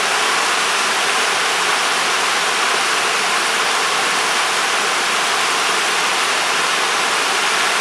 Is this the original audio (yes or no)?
yes